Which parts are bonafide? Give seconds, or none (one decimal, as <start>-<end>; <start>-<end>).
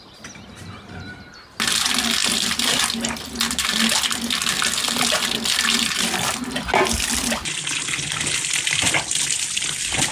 0.0-2.2; 2.9-10.1